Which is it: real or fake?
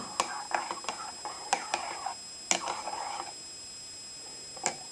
real